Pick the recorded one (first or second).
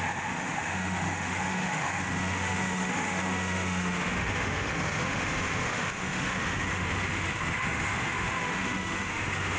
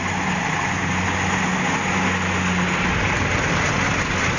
second